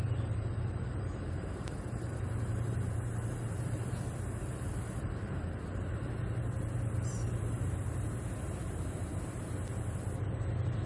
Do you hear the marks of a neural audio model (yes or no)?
yes